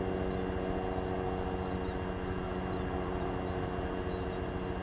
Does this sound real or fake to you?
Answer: real